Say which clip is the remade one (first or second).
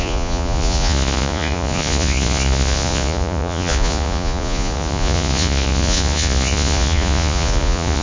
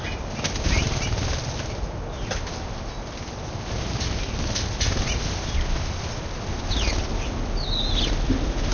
first